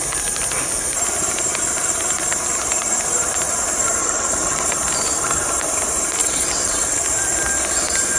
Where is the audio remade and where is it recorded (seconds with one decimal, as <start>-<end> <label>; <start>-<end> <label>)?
0.0-4.0 recorded; 4.0-4.7 remade; 4.7-6.2 recorded; 6.2-7.0 remade; 7.0-8.2 recorded

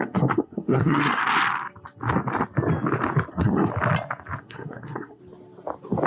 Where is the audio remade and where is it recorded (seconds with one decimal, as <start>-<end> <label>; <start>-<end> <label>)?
0.0-1.2 remade; 1.2-3.3 recorded; 3.3-3.7 remade; 3.7-4.4 recorded; 4.4-5.2 remade; 5.2-6.1 recorded

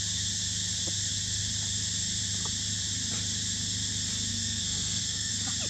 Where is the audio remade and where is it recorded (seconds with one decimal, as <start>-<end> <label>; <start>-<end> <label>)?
0.0-4.3 recorded; 4.3-5.3 remade; 5.3-5.7 recorded

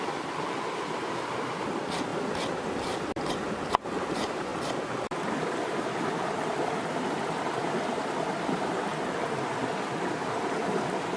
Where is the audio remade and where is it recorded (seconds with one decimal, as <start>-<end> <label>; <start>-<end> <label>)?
0.0-4.5 remade; 4.5-5.4 recorded; 5.4-8.9 remade; 8.9-9.6 recorded; 9.6-11.2 remade

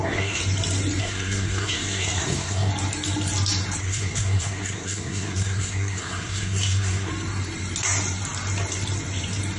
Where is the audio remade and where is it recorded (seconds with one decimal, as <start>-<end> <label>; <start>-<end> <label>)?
0.0-0.4 remade; 0.4-1.0 recorded; 1.0-2.7 remade; 2.7-3.8 recorded; 3.8-7.1 remade; 7.1-9.6 recorded

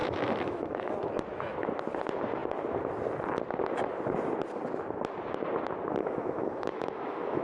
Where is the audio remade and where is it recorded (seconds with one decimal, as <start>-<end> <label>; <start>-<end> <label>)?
0.0-0.9 remade; 0.9-6.0 recorded; 6.0-7.4 remade